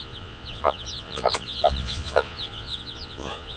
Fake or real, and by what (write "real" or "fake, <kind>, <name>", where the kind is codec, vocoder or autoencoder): fake, vocoder, Vocos